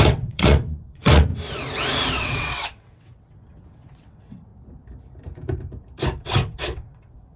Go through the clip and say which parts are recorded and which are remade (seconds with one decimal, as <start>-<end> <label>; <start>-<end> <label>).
0.0-1.3 remade; 1.3-2.1 recorded; 2.1-4.5 remade; 4.5-6.2 recorded; 6.2-7.4 remade